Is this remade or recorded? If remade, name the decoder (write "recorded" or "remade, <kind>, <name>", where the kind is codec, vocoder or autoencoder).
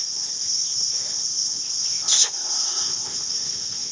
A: remade, codec, ZipCodec